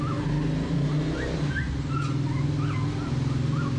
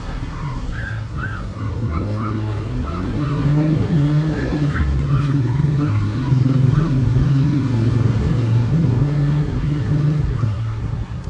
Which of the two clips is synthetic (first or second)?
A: second